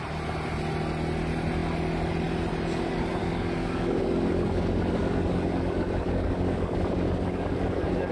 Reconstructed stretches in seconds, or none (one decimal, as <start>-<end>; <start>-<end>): 3.2-8.1